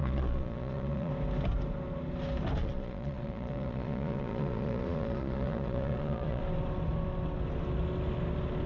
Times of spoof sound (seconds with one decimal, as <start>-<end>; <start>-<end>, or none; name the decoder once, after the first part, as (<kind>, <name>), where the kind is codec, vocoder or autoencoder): 0.0-1.1 (vocoder, Vocos); 2.6-6.4